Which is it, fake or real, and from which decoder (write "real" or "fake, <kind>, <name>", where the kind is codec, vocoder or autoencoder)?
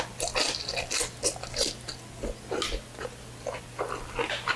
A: real